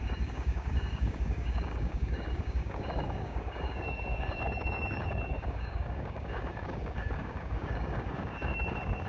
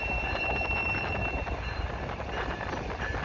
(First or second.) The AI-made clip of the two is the first